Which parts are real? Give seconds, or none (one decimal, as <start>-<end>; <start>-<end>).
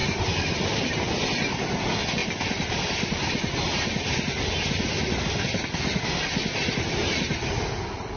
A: 0.9-2.2; 6.0-7.0